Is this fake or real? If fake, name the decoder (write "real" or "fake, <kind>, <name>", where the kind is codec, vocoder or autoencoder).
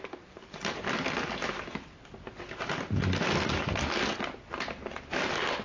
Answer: real